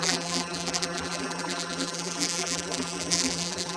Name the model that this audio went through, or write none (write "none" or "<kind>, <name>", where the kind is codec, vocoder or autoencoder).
vocoder, BigVGAN v2